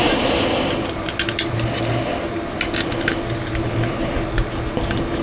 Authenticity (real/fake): real